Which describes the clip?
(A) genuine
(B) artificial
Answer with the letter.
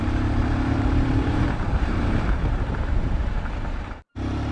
B